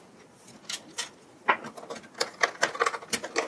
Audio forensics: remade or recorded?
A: recorded